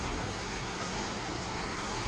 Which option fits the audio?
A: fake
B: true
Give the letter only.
A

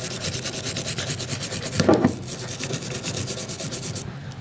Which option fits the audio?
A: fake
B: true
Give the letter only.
B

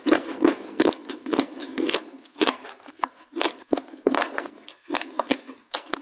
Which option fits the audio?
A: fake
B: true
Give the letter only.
A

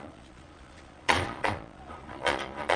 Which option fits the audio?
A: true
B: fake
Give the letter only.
B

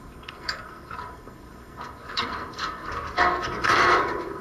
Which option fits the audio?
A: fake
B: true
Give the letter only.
A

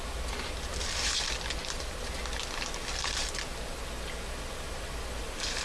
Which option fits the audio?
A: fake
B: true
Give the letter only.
B